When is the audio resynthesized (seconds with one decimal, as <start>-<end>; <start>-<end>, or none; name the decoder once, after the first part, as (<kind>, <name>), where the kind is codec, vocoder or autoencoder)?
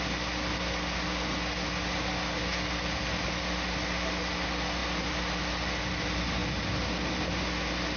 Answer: none